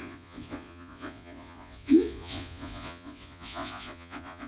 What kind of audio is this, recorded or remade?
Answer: remade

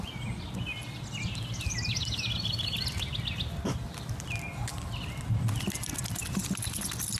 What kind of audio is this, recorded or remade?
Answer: recorded